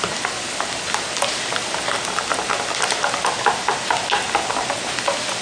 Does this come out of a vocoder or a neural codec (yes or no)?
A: no